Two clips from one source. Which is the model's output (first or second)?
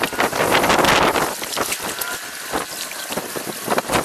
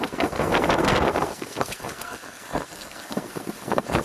second